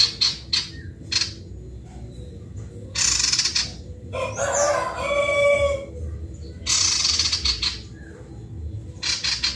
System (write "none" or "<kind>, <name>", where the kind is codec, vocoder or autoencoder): none